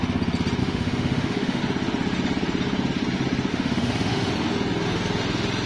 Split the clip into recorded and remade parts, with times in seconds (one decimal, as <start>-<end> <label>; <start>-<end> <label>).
0.0-0.6 recorded; 0.6-1.6 remade; 1.6-3.5 recorded; 3.5-4.3 remade; 4.3-5.7 recorded